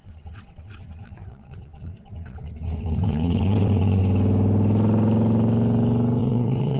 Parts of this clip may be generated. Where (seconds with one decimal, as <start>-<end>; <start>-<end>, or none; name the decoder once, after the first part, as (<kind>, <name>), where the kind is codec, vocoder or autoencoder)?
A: 0.0-4.0 (vocoder, WaveNeXt); 6.2-6.8